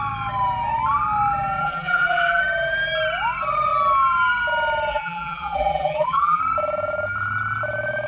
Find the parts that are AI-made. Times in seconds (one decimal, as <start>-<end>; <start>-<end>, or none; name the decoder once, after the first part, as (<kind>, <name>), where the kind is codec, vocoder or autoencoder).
1.6-2.4 (vocoder, BigVGAN v2); 4.9-6.4